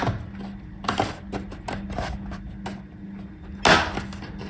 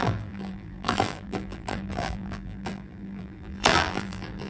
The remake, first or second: second